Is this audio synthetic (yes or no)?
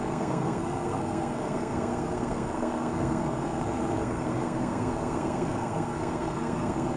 yes